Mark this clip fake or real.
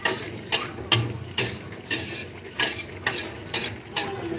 real